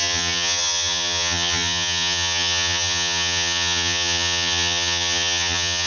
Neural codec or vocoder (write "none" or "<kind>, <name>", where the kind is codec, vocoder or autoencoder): vocoder, HiFi-GAN